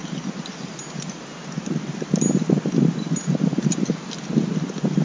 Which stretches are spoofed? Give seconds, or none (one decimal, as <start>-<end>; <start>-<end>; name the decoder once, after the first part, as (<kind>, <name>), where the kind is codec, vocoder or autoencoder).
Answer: none